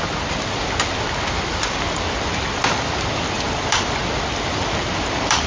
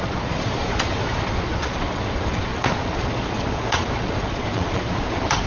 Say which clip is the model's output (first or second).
second